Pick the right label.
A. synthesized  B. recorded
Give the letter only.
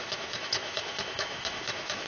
A